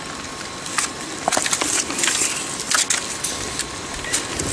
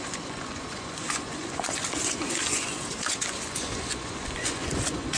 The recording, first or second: first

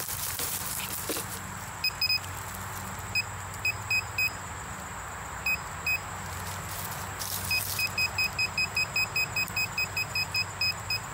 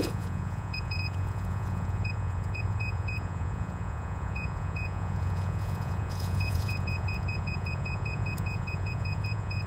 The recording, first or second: first